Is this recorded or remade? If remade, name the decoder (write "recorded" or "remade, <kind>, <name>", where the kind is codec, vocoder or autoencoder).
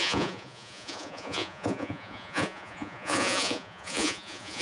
remade, vocoder, Vocos